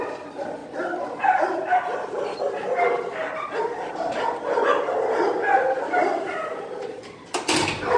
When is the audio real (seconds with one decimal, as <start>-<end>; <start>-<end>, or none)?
3.2-6.1